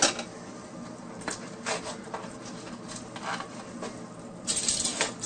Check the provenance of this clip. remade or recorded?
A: recorded